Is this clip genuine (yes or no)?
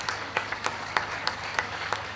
no